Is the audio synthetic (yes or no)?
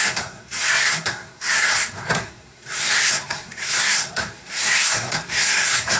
yes